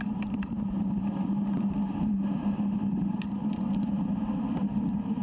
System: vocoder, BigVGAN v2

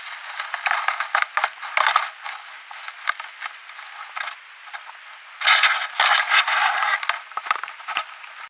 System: none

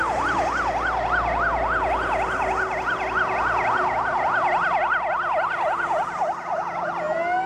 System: none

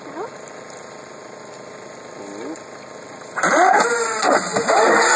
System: none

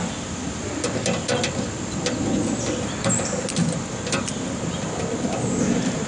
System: none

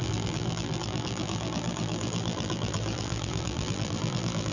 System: vocoder, BigVGAN v2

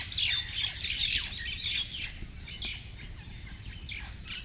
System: none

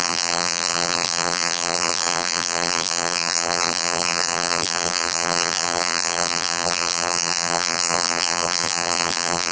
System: vocoder, BigVGAN v2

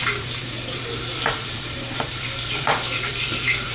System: vocoder, BigVGAN v2